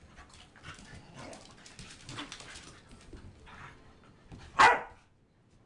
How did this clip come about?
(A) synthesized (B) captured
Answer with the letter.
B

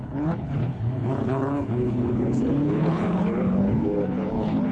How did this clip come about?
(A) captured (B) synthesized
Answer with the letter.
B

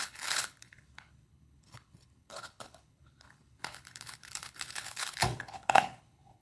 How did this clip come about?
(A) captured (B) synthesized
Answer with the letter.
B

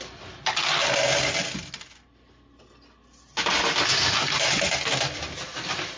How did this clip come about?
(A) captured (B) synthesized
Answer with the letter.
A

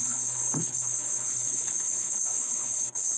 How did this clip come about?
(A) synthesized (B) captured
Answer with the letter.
A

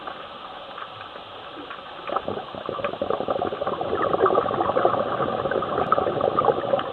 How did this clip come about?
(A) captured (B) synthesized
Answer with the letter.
A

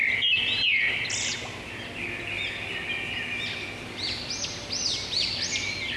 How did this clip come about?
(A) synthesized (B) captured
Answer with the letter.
B